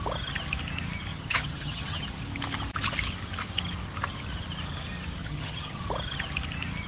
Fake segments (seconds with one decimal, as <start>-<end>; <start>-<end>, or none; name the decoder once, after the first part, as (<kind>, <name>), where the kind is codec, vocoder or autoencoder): 1.1-2.2 (vocoder, HiFi-GAN); 5.2-5.8